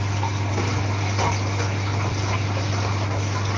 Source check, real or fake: real